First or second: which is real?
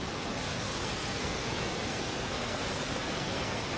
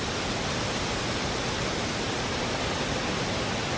second